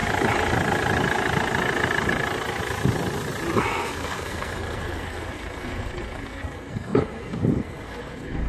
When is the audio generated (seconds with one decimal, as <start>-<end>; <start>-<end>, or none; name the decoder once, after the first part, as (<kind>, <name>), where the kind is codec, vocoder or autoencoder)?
3.6-8.5 (codec, SNAC)